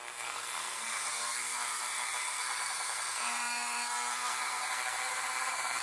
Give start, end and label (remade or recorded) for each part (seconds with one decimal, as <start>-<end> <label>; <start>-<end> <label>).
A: 0.0-5.8 remade